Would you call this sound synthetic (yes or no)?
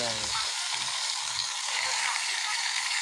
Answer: yes